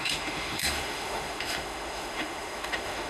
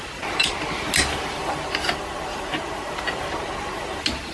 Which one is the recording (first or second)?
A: second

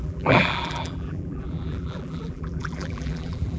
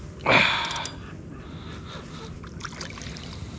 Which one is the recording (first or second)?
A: second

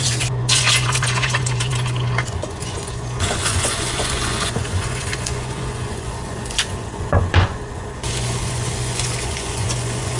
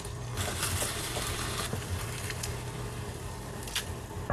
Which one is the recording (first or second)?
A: second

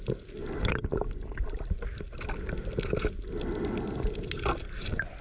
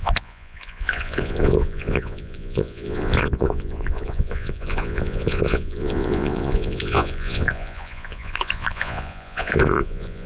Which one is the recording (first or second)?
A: first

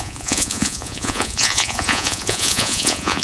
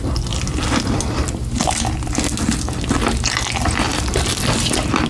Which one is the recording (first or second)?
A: second